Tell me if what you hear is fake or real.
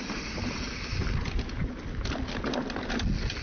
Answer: real